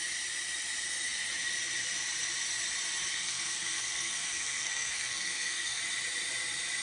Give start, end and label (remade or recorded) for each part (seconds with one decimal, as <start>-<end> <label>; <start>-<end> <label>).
0.0-3.1 recorded; 3.1-5.8 remade; 5.8-6.8 recorded